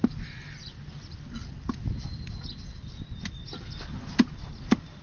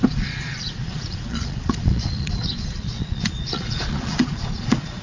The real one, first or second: first